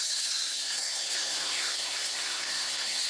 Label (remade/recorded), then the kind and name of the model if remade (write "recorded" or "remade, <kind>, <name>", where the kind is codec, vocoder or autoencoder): remade, codec, SNAC